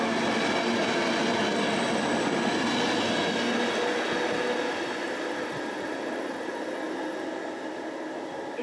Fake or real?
real